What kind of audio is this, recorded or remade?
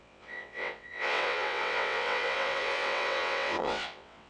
remade